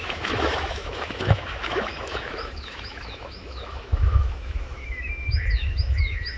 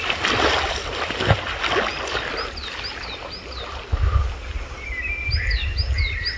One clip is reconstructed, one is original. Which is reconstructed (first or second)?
first